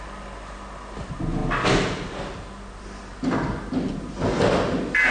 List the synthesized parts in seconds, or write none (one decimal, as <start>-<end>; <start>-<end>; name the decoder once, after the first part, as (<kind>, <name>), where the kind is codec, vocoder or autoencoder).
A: none